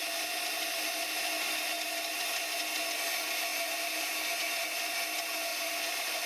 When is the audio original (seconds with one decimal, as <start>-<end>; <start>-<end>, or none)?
0.0-3.5; 4.1-5.5